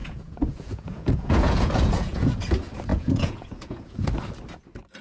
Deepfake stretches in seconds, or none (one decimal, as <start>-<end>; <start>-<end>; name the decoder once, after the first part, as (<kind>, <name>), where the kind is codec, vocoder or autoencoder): 0.0-2.5 (vocoder, Vocos); 2.9-4.1